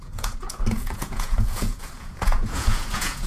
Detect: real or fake fake